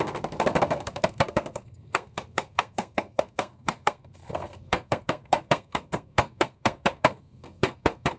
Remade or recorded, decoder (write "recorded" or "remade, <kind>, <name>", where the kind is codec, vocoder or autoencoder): remade, codec, SNAC